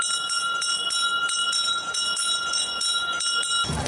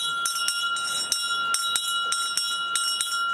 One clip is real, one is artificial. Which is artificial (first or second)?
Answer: first